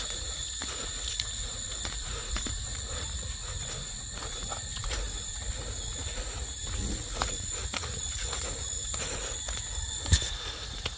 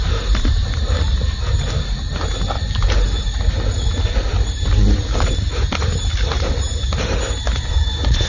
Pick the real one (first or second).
second